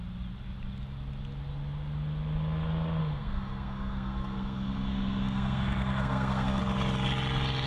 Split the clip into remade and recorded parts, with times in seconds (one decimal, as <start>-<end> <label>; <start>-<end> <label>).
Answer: 0.0-3.0 recorded; 3.0-6.6 remade; 6.6-7.7 recorded